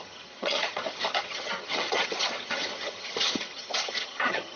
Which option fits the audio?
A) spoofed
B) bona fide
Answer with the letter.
A